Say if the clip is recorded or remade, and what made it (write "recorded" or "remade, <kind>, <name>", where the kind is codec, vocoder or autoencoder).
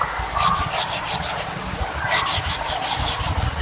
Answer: recorded